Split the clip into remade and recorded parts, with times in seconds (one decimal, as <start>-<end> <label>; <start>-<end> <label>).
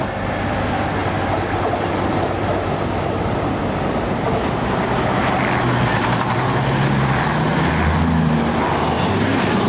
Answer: 0.0-9.7 recorded